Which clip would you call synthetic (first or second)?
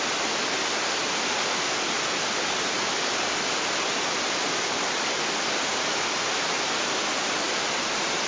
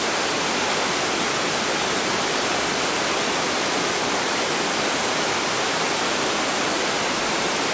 second